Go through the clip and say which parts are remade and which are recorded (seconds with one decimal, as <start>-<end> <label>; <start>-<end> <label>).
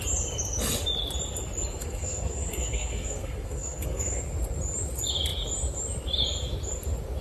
0.0-1.8 recorded; 1.8-4.2 remade; 4.2-7.2 recorded